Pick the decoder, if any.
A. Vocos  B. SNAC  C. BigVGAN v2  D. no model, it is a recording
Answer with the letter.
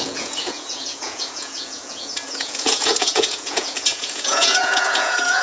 A